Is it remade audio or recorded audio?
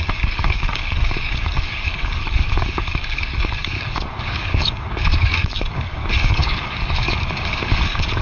remade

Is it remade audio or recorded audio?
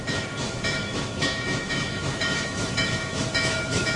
remade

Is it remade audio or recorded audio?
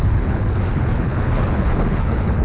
remade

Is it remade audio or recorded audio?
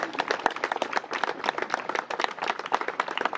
recorded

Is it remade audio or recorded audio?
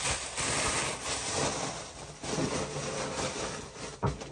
recorded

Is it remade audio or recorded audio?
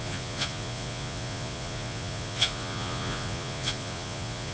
remade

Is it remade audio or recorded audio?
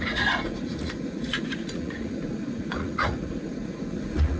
remade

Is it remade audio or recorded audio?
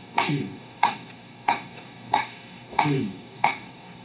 remade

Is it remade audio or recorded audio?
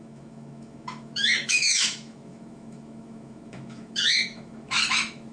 remade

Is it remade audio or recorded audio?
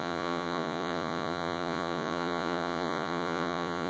remade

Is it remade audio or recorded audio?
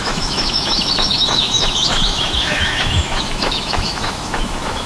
remade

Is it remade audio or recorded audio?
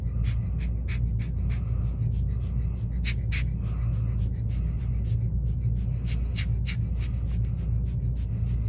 recorded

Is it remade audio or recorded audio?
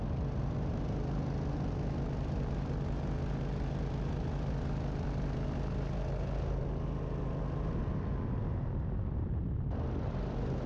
recorded